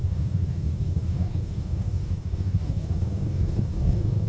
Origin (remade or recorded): remade